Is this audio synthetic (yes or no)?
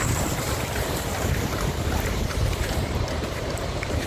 yes